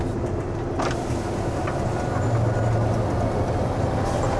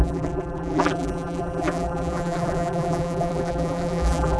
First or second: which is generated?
second